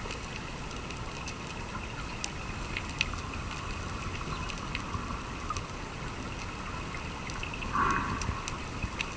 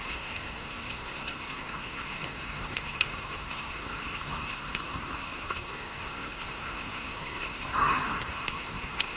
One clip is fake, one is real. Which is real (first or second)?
first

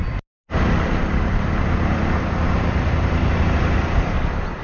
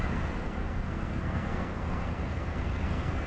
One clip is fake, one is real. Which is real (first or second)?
first